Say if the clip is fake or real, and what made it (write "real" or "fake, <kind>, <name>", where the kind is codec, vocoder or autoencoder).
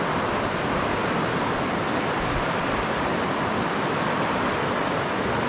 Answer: real